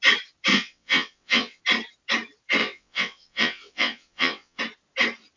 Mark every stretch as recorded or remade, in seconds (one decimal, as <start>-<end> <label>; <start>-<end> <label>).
0.0-0.5 recorded; 0.5-1.6 remade; 1.6-2.6 recorded; 2.6-4.6 remade; 4.6-5.4 recorded